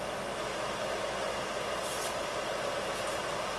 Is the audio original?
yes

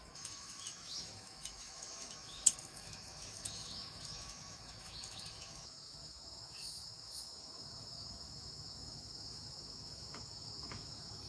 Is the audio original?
no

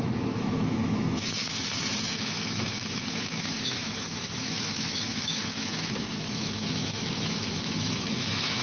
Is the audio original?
no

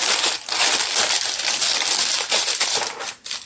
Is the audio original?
no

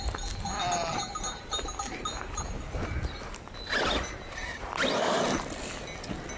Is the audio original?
yes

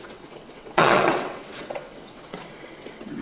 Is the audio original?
no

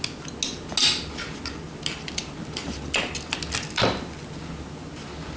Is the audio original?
yes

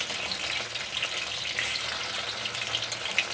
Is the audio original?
yes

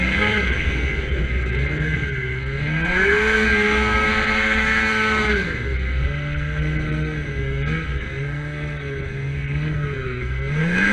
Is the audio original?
no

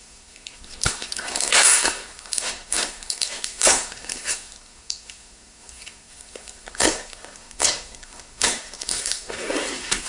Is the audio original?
no